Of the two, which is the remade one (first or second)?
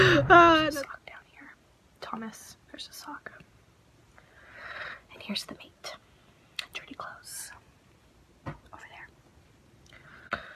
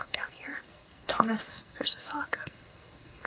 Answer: second